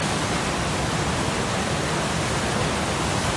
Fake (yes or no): no